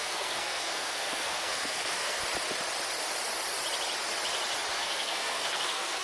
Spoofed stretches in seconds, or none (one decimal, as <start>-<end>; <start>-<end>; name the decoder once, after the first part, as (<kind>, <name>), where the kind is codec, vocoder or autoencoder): 0.0-2.2 (codec, SNAC); 4.7-6.0